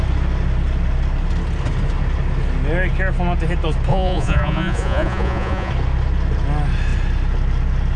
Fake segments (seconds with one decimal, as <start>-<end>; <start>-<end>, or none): 3.9-5.7